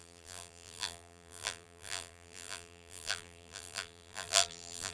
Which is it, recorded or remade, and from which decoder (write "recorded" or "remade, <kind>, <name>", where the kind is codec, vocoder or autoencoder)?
remade, vocoder, BigVGAN v2